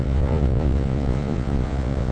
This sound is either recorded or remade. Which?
remade